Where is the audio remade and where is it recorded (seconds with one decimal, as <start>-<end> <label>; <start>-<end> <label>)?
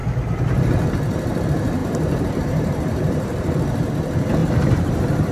0.0-1.8 recorded; 1.8-3.9 remade; 3.9-4.4 recorded; 4.4-5.3 remade